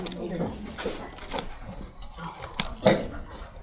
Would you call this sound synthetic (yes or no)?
no